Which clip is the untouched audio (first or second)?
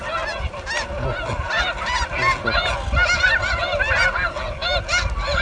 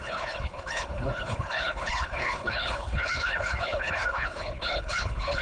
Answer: first